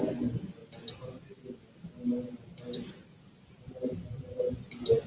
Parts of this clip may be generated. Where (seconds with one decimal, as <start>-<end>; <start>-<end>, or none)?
none